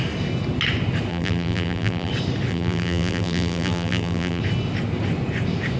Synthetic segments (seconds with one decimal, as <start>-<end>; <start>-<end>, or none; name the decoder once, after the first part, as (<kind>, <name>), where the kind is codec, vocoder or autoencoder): 1.1-2.1 (vocoder, BigVGAN v2); 2.5-4.4